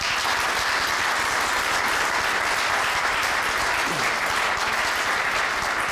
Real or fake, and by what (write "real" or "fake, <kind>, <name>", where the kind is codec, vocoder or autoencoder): real